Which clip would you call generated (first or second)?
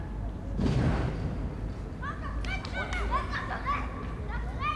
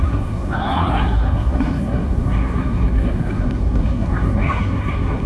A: second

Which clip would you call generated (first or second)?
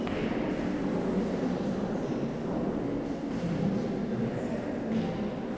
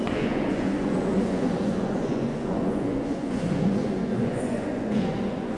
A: second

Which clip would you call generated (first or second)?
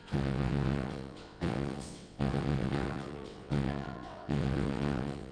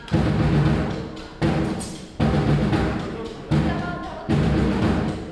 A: first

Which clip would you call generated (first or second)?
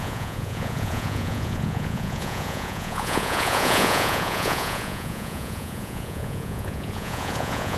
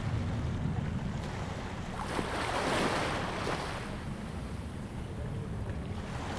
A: first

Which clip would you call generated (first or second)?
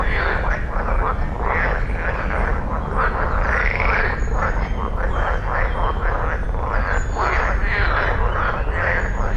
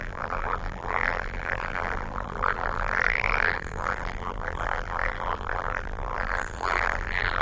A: second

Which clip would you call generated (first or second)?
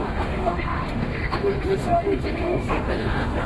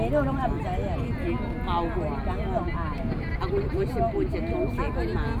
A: first